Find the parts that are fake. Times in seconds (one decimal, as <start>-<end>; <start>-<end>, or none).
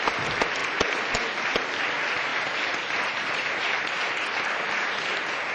0.6-1.1; 2.3-4.1